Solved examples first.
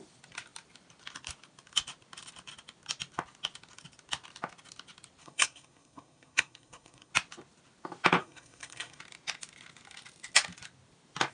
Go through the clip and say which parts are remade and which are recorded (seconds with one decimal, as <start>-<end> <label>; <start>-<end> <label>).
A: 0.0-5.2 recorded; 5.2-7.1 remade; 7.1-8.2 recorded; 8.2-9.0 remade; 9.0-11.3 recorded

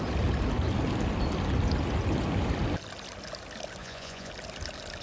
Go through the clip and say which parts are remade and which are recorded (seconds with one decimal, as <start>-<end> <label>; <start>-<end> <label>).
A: 0.0-3.8 recorded; 3.8-4.3 remade; 4.3-5.0 recorded

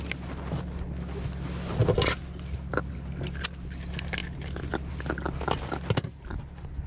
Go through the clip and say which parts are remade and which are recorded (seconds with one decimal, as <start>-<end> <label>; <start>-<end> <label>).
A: 0.0-6.9 recorded

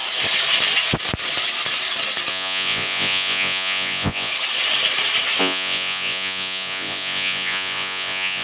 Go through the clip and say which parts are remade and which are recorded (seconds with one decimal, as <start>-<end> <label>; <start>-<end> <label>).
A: 0.0-2.3 recorded; 2.3-4.3 remade; 4.3-5.4 recorded; 5.4-8.4 remade